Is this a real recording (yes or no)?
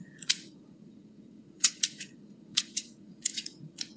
no